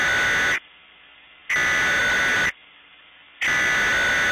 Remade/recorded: recorded